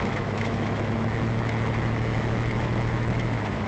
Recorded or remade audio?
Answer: remade